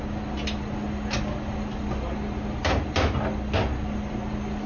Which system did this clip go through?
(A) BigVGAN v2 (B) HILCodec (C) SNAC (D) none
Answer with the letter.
D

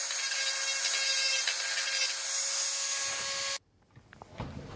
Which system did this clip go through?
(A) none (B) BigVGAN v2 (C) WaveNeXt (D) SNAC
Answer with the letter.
A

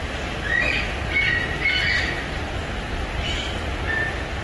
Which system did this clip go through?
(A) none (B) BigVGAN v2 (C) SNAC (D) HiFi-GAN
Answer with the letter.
A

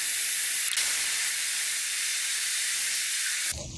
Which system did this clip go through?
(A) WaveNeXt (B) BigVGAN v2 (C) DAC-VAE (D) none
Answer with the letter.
D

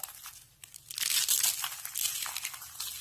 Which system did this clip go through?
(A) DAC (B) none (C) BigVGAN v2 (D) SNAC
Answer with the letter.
B